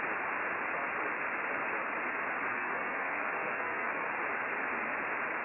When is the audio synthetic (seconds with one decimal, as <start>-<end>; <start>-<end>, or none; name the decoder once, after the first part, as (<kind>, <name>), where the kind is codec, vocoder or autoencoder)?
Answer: 2.5-4.1 (codec, SNAC)